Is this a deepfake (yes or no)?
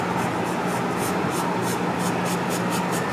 no